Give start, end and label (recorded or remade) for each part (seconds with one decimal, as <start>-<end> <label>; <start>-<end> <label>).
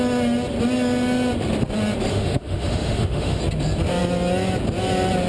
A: 0.0-2.1 recorded; 2.1-3.4 remade; 3.4-5.3 recorded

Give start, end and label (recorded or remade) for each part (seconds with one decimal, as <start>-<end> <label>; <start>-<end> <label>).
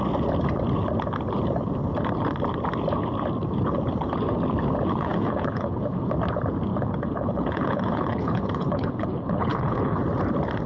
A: 0.0-4.9 recorded; 4.9-6.1 remade; 6.1-6.7 recorded; 6.7-10.0 remade; 10.0-10.7 recorded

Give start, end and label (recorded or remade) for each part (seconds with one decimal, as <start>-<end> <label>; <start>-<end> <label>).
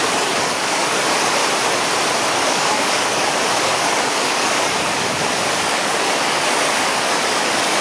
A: 0.0-1.4 remade; 1.4-2.3 recorded; 2.3-7.8 remade